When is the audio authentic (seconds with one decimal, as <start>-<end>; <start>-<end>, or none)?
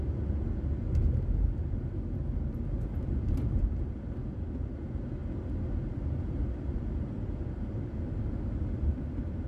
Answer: 0.0-9.5